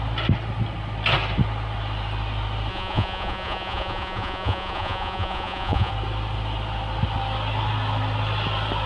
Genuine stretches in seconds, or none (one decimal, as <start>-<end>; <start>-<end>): 0.0-2.7; 5.9-8.9